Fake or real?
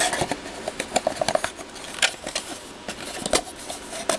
real